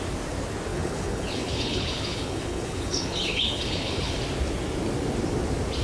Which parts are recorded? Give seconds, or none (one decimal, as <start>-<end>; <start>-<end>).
0.0-0.7; 4.2-5.8